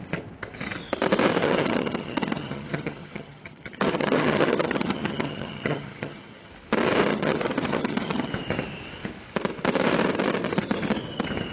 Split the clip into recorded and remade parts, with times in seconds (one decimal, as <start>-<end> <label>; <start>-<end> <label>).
0.0-1.4 recorded; 1.4-6.5 remade; 6.5-7.1 recorded; 7.1-8.3 remade; 8.3-11.5 recorded